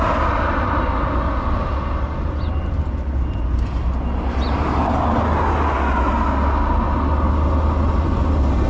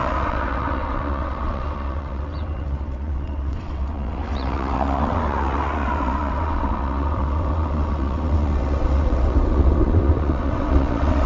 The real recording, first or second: first